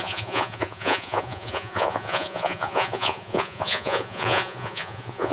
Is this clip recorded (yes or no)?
no